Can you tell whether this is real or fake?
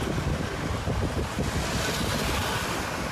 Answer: fake